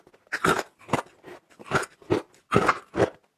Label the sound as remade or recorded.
recorded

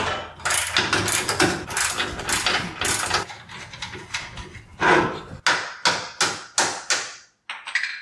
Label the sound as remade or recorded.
recorded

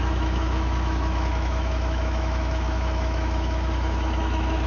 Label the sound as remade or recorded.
remade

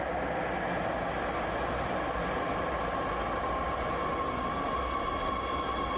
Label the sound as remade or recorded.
recorded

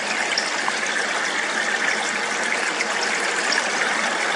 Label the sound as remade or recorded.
recorded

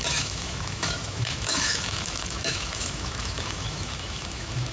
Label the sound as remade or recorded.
remade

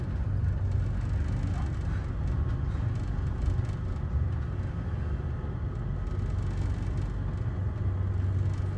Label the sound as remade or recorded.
recorded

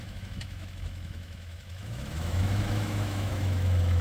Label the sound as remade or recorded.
remade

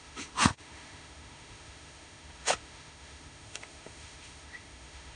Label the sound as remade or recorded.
remade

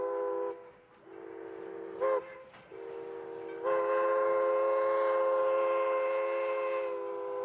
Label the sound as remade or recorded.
recorded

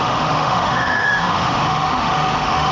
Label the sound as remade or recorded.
remade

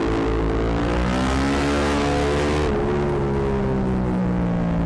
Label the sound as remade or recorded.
recorded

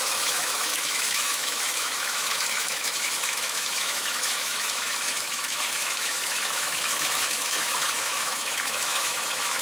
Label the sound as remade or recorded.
remade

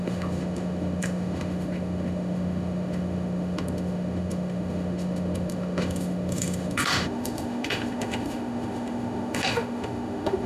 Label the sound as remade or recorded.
remade